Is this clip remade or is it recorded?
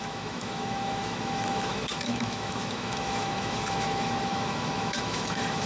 remade